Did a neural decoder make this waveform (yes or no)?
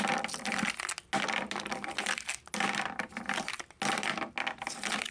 no